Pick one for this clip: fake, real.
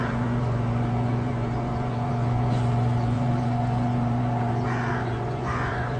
fake